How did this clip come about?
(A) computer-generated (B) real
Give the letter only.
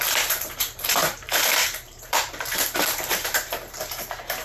A